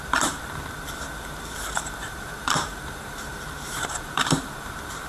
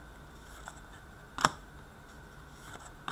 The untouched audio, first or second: second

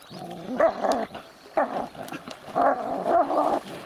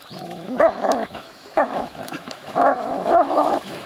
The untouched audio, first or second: first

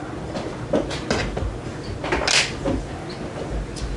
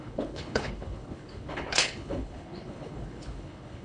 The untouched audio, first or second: first